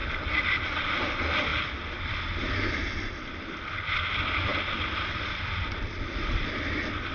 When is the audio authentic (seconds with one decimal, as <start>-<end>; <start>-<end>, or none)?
0.0-0.8; 1.5-2.4